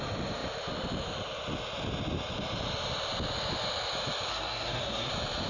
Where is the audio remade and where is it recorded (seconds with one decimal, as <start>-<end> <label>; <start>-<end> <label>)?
0.0-4.3 recorded; 4.3-5.1 remade; 5.1-5.5 recorded